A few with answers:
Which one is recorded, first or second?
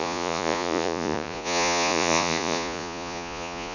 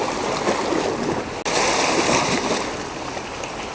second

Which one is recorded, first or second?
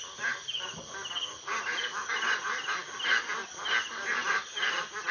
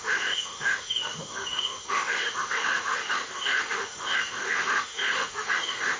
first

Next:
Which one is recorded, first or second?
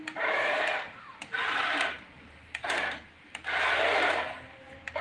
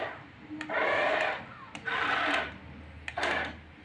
second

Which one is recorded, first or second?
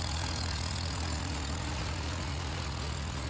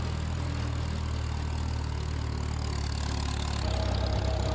second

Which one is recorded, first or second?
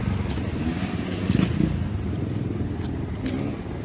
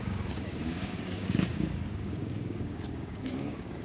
first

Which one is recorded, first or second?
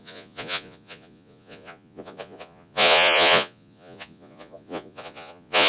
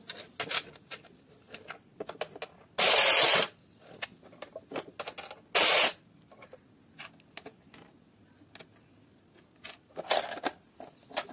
second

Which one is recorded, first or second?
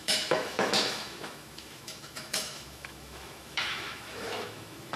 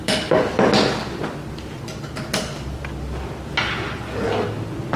second